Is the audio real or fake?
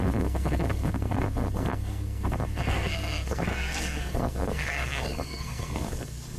fake